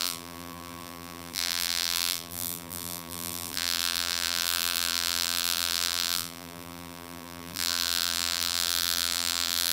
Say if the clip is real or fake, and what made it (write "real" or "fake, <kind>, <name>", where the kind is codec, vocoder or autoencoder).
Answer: fake, vocoder, BigVGAN v2